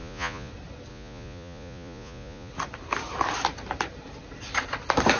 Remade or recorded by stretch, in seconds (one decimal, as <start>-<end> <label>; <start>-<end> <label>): 0.0-0.5 remade; 0.5-0.9 recorded; 0.9-2.5 remade; 2.5-5.2 recorded